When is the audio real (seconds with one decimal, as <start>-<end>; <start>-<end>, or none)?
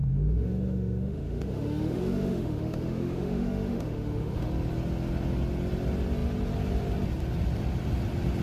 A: 4.5-8.4